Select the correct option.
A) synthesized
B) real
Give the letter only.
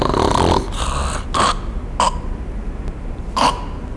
B